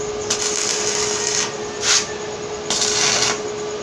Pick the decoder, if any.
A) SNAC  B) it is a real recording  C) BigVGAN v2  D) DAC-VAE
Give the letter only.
B